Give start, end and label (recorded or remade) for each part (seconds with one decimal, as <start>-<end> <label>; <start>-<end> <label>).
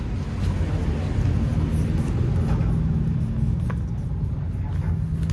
0.0-5.3 recorded